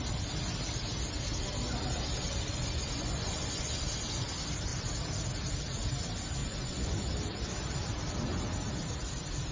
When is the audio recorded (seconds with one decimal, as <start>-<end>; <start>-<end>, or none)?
0.0-2.5; 3.8-6.4; 7.1-9.5